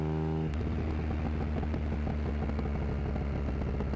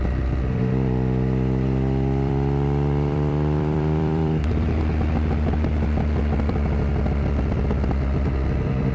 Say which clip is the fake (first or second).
second